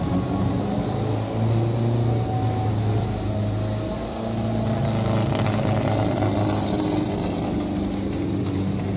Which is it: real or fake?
real